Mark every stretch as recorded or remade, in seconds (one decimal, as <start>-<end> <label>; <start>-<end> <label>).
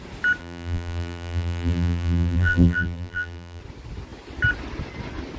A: 0.0-0.4 recorded; 0.4-3.6 remade; 3.6-5.4 recorded